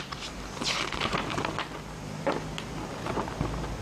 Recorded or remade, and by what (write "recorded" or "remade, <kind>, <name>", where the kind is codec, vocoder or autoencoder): recorded